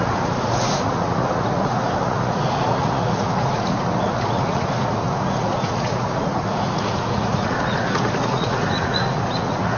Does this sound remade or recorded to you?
remade